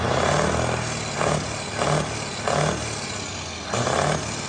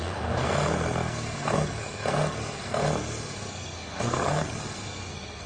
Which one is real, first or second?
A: first